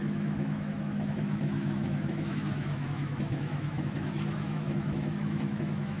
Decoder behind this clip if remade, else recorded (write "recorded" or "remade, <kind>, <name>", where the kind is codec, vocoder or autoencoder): remade, autoencoder, DAC-VAE